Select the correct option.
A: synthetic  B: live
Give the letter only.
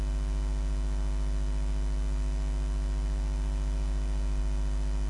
B